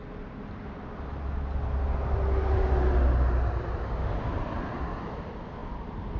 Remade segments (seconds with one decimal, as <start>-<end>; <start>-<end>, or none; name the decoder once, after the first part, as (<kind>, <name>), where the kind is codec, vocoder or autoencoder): none